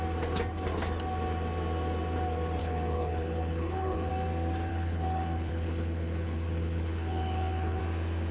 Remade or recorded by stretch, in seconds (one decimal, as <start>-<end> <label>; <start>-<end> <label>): 0.0-2.6 recorded; 2.6-4.1 remade; 4.1-4.7 recorded; 4.7-7.8 remade; 7.8-8.3 recorded